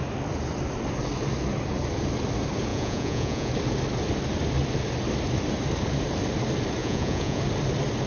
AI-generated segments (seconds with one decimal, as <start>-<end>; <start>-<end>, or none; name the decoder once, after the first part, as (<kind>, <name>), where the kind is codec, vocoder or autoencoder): 2.7-3.5 (vocoder, Vocos); 6.8-7.4